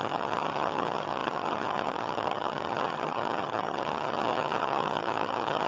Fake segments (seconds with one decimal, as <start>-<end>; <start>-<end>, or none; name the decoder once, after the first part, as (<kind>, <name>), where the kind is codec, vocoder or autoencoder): 0.0-5.7 (vocoder, HiFi-GAN)